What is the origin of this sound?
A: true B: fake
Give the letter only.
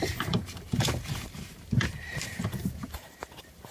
B